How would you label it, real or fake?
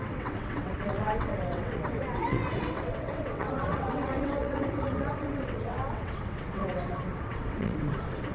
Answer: fake